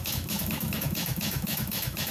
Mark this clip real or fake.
fake